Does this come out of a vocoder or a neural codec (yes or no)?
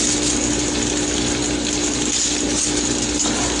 no